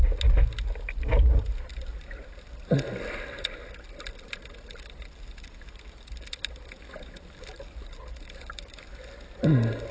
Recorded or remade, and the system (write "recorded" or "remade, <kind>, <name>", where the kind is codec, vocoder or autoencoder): recorded